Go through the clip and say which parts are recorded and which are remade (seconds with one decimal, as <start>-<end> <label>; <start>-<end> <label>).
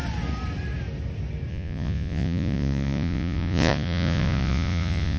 0.0-1.5 recorded; 1.5-5.2 remade